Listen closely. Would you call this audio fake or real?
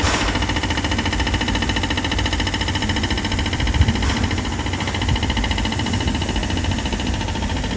real